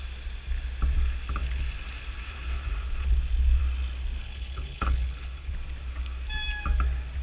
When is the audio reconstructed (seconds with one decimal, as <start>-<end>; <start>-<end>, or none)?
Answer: 4.2-5.5